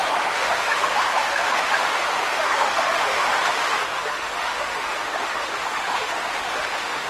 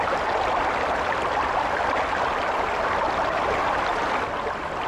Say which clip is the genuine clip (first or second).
second